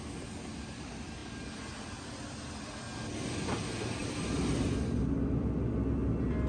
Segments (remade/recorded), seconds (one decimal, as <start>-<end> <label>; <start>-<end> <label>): 0.0-6.5 recorded